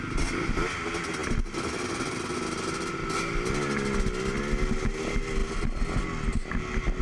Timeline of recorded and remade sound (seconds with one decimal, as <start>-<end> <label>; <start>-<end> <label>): 0.0-7.0 recorded